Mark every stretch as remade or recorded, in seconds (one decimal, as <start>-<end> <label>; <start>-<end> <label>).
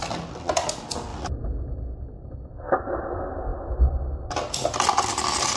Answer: 0.0-5.6 recorded